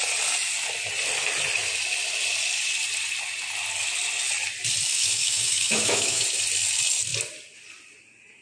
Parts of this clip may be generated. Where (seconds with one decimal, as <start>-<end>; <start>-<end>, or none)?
4.9-6.2